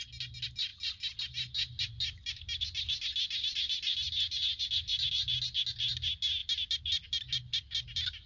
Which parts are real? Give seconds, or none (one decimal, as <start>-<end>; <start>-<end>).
0.0-6.4